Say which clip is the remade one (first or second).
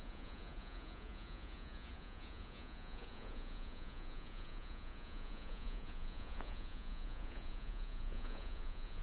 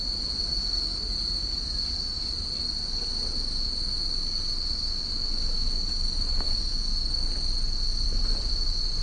first